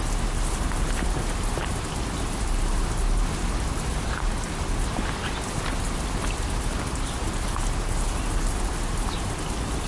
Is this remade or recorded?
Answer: recorded